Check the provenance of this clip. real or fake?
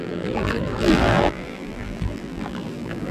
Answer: fake